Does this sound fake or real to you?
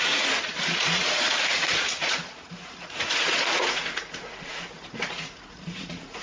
fake